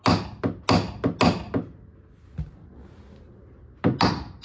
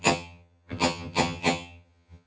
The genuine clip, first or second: first